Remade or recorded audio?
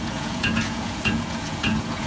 remade